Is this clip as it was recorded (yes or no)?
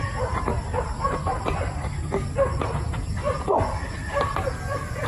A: yes